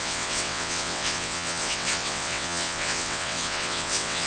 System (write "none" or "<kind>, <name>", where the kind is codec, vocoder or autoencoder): vocoder, WaveNeXt